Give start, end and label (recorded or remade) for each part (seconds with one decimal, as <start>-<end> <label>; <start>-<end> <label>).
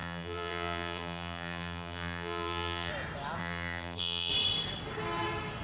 0.0-2.9 remade; 2.9-3.4 recorded; 3.4-4.3 remade; 4.3-5.6 recorded